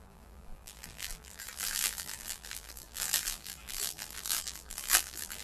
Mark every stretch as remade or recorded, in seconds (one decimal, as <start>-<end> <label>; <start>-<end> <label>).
0.0-5.4 remade